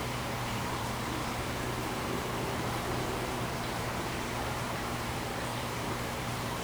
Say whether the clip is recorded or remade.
remade